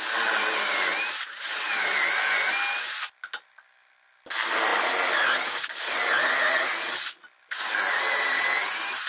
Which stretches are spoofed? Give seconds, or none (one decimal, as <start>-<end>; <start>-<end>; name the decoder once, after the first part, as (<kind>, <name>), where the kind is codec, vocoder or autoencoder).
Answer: none